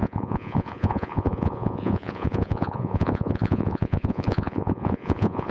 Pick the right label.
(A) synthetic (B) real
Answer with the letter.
A